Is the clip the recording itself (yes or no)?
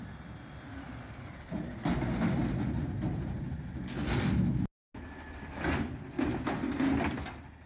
yes